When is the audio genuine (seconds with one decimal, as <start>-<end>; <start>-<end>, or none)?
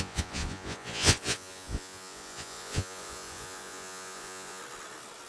4.6-5.3